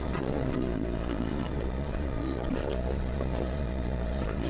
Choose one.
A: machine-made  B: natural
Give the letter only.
A